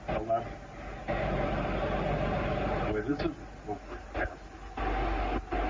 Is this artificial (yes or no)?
no